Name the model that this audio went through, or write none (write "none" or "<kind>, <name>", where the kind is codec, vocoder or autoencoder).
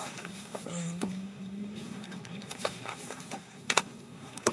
codec, SNAC